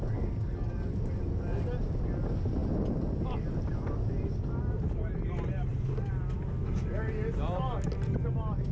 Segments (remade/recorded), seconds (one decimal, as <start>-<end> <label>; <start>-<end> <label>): 0.0-8.7 recorded